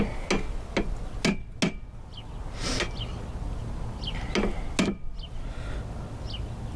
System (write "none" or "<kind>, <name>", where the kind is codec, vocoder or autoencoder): none